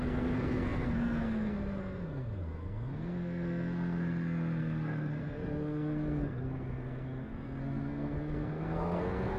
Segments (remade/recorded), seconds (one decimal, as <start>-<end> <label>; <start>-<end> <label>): 0.0-9.4 remade